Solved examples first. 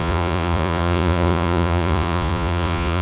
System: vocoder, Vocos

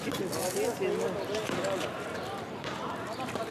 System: none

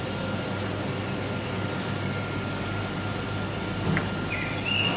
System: none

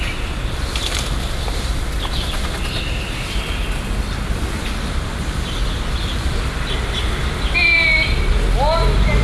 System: none